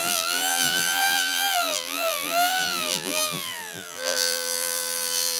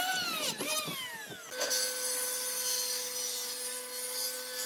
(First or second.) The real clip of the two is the second